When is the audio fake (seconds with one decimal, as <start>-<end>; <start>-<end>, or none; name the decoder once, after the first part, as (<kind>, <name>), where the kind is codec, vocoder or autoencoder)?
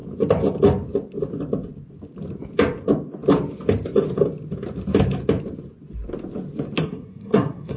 6.8-7.8 (codec, SNAC)